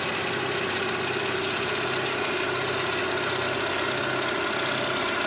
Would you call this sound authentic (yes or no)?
yes